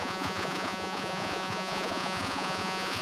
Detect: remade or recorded remade